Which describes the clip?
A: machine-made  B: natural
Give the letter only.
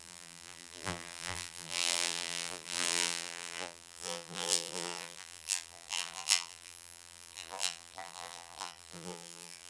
A